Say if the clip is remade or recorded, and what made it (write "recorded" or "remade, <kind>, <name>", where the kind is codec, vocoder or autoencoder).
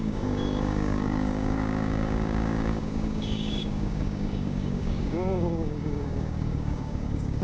remade, codec, DAC